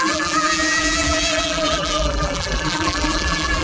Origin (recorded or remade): remade